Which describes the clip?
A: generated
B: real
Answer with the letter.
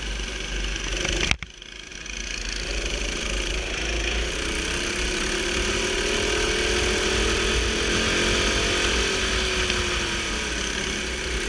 B